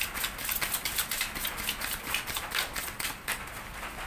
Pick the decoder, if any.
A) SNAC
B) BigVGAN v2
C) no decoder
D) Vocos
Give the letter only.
C